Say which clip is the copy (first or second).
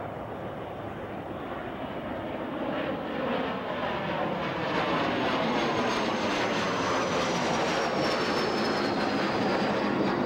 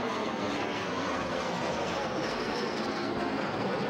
second